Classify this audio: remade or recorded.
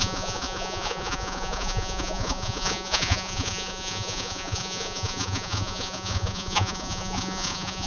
remade